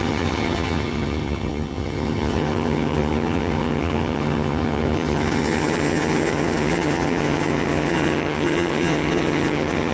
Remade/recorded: remade